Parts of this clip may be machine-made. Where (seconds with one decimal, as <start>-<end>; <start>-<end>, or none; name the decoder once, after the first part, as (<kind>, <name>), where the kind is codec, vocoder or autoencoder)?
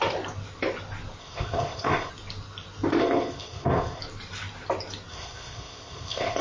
1.2-2.1 (codec, ZipCodec); 3.0-4.0; 5.1-6.4